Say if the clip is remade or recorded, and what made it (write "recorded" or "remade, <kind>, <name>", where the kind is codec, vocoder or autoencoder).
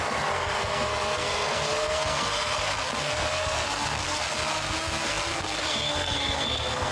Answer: remade, codec, SNAC